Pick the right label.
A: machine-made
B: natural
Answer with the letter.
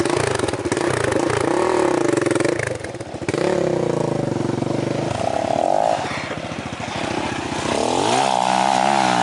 B